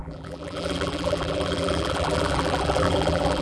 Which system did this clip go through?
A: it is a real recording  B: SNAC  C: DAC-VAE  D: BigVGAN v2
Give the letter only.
D